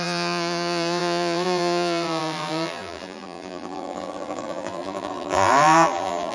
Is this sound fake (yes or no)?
yes